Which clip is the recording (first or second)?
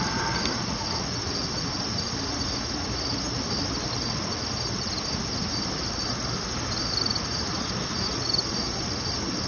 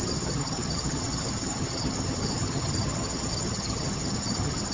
first